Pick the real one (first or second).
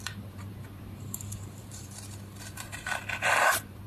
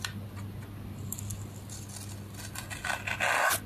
second